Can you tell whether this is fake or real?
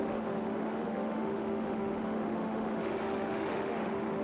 fake